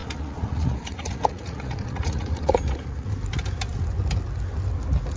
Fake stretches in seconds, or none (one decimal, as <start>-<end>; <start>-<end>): 0.0-3.1